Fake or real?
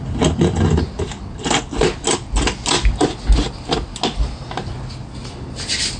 real